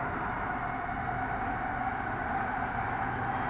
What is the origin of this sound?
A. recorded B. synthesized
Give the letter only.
A